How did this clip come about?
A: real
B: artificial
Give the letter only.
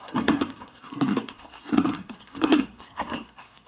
B